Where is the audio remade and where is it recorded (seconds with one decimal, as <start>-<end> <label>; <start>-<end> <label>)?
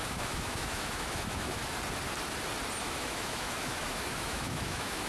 0.0-1.6 remade; 1.6-2.8 recorded; 2.8-5.1 remade